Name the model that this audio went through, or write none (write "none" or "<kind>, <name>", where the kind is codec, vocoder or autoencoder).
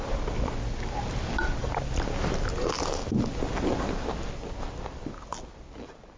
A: none